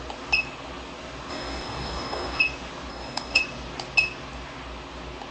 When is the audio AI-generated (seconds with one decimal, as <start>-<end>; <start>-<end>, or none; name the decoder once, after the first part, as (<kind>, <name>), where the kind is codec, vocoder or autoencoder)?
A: 1.3-2.4 (codec, DAC); 2.9-3.4